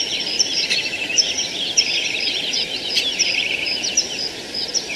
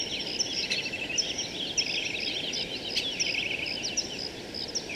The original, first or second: second